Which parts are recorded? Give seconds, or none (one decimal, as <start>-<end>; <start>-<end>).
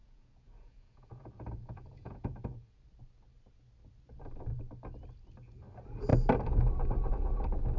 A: 2.8-7.8